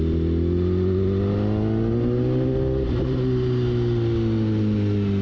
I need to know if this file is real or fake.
real